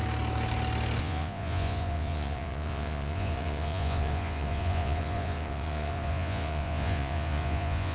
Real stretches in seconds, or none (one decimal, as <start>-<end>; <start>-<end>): 0.0-1.0